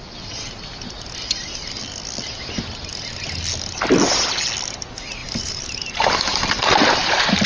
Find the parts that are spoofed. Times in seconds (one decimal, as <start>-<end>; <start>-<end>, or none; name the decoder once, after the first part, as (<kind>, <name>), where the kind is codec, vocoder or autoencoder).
5.2-7.1 (vocoder, BigVGAN v2)